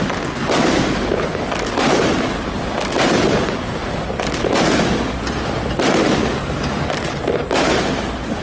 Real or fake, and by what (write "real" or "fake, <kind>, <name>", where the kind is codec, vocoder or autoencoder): real